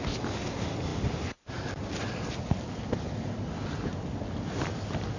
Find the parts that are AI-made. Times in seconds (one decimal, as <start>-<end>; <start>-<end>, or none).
none